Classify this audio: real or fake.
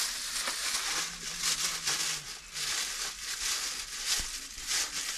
real